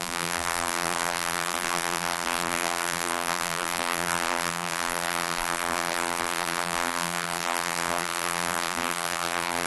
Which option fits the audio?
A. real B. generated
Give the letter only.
B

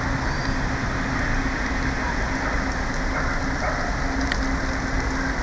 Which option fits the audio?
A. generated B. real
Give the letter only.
B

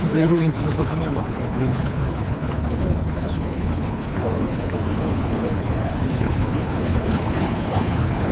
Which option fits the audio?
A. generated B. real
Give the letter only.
A